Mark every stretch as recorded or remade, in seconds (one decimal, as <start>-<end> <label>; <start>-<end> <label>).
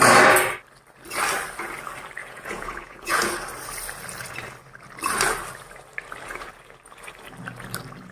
0.0-2.2 recorded; 2.2-3.3 remade; 3.3-8.1 recorded